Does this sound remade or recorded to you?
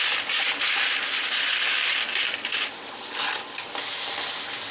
recorded